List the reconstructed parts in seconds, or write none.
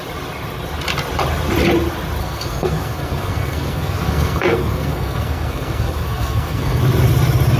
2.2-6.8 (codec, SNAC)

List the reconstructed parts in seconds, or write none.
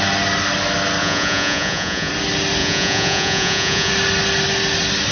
1.0-2.1 (vocoder, Vocos); 2.6-3.9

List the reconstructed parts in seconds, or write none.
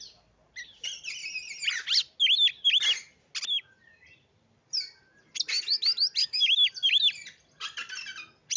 6.2-6.7 (autoencoder, DAC-VAE)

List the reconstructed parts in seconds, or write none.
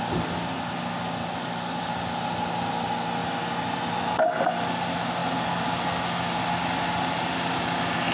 none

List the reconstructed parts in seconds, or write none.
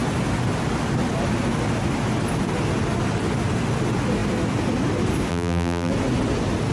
5.3-5.9 (vocoder, BigVGAN v2)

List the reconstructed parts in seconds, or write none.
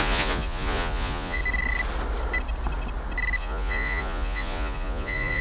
0.0-1.4 (vocoder, Vocos); 3.4-5.4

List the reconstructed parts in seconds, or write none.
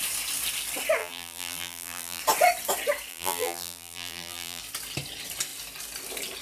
1.0-2.2 (vocoder, BigVGAN v2); 3.1-4.6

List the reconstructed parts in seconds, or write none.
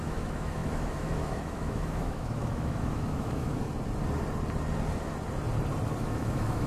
0.0-3.6 (autoencoder, DAC-VAE); 6.0-6.7